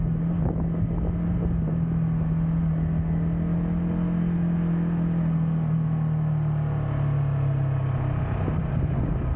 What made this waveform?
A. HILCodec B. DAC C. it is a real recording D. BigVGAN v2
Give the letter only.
C